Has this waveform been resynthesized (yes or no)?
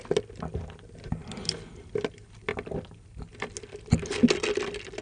no